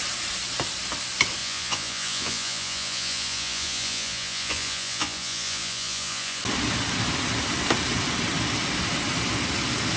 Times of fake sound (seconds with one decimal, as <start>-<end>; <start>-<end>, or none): 1.4-6.4